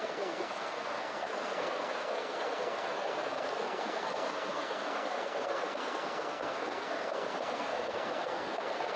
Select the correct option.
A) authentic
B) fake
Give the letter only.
B